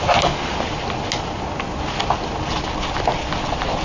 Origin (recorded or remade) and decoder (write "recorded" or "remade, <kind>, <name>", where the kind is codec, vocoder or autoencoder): recorded